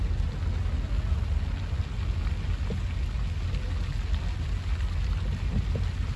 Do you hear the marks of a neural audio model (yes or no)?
no